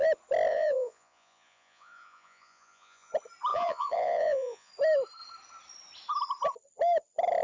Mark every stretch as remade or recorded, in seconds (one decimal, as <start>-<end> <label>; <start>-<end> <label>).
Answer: 0.0-0.5 recorded; 0.5-3.1 remade; 3.1-3.5 recorded; 3.5-4.7 remade; 4.7-7.4 recorded